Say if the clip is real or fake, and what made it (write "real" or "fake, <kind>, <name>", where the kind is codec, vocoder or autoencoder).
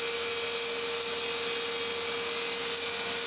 real